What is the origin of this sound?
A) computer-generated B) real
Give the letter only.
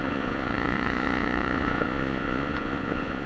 A